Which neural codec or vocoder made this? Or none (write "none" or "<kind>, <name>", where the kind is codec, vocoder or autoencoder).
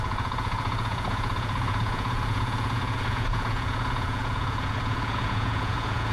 vocoder, Vocos